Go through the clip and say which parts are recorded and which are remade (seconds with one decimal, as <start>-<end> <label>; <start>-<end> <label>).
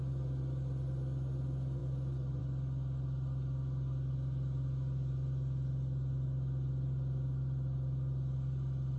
0.0-9.0 recorded